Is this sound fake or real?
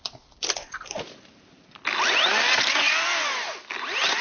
real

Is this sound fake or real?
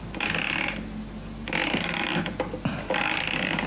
real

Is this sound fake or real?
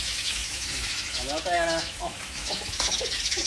fake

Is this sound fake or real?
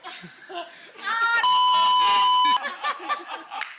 real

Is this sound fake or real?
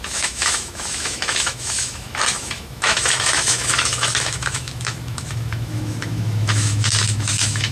fake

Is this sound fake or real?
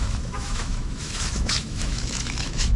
fake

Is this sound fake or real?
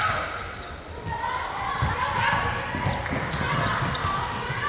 real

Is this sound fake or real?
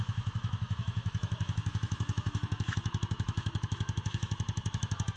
fake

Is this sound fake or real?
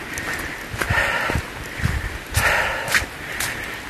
real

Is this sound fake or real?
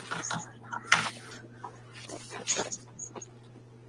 real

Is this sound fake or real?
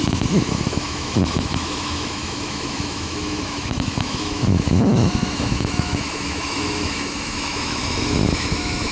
fake